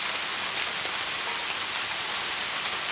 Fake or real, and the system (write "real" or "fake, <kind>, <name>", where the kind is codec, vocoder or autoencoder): real